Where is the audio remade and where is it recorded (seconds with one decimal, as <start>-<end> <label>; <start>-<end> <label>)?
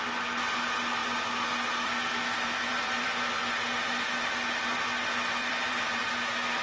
0.0-2.1 recorded; 2.1-3.4 remade; 3.4-5.4 recorded; 5.4-6.0 remade; 6.0-6.6 recorded